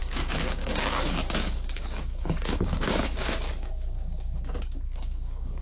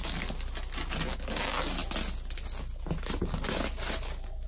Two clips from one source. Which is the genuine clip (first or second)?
second